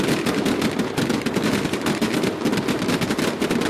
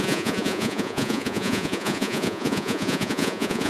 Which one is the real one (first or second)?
first